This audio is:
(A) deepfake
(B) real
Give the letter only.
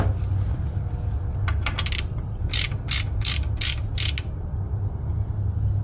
B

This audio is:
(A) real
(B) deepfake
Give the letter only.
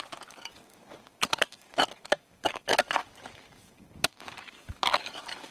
B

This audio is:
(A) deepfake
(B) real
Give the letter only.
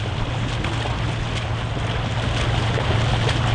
B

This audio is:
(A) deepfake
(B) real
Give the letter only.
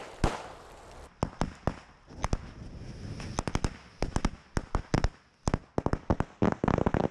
B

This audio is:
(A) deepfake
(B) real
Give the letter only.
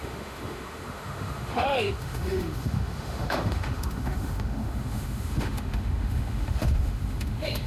A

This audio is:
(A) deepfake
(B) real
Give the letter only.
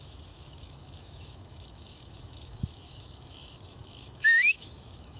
A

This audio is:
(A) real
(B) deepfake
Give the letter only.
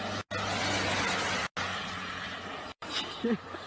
A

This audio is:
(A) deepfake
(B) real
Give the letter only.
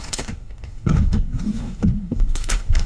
A